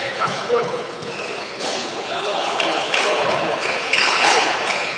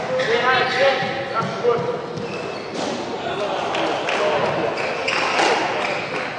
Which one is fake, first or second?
first